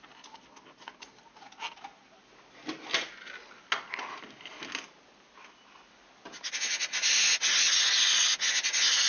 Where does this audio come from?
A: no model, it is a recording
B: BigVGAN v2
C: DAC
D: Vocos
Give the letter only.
A